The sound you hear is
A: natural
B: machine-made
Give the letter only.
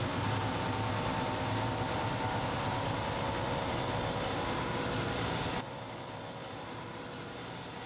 B